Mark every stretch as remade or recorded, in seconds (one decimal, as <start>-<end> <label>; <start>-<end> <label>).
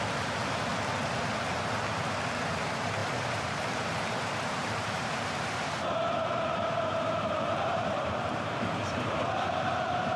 0.0-0.7 remade; 0.7-1.4 recorded; 1.4-10.2 remade